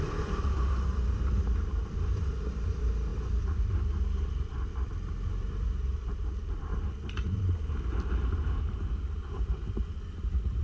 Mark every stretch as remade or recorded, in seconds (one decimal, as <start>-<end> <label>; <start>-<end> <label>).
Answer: 0.0-6.7 remade; 6.7-8.5 recorded; 8.5-10.6 remade